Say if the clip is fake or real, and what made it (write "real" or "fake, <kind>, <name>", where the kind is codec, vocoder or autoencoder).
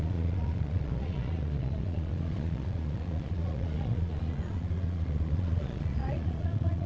fake, vocoder, Vocos